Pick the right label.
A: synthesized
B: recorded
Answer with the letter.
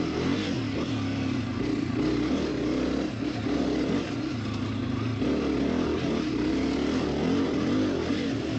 B